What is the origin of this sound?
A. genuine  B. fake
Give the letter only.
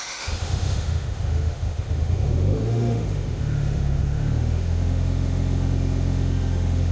B